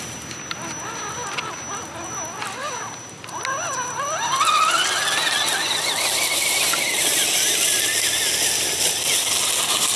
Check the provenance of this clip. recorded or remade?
recorded